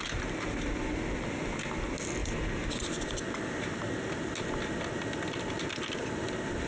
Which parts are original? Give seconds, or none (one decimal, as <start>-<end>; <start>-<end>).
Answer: 0.0-6.7